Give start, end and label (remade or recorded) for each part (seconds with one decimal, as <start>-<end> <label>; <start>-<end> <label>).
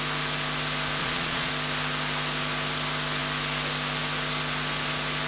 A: 0.0-1.0 recorded; 1.0-1.5 remade; 1.5-5.3 recorded